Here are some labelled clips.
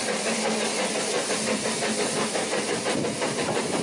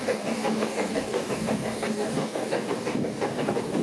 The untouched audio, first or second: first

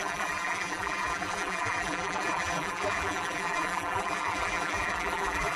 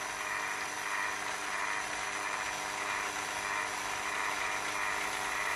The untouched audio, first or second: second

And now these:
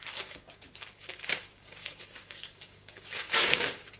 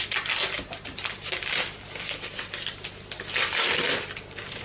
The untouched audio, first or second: second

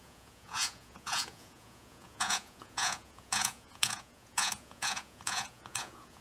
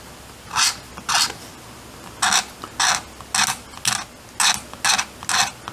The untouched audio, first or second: second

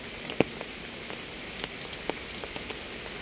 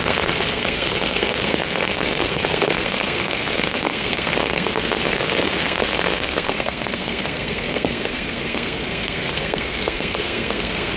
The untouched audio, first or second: first